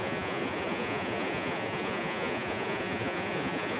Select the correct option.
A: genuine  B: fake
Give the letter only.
B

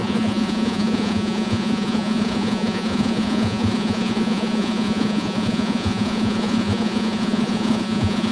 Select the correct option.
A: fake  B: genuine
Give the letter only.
A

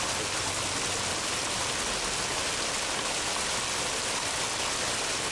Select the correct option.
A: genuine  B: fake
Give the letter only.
A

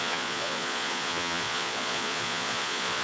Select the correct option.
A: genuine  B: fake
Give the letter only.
B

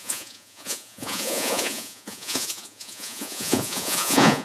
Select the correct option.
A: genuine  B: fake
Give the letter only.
B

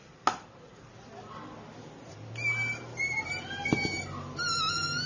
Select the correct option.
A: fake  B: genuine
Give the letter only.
B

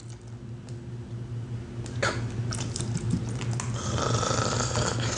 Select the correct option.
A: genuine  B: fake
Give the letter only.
A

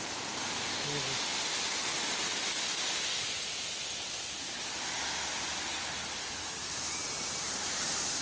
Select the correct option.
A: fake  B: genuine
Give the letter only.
B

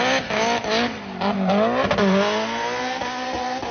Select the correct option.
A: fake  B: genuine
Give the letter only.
B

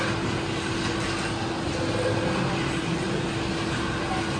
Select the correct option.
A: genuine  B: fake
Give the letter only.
A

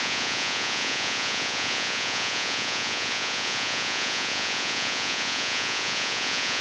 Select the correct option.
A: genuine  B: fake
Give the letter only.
B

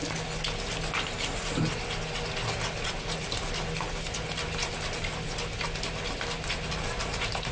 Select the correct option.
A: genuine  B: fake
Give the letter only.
A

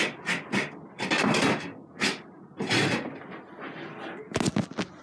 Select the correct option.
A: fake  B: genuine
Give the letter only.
B